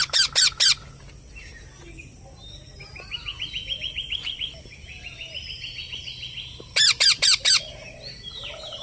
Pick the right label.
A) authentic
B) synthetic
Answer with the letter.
A